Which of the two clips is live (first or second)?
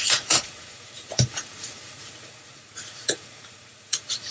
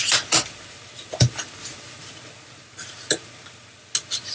second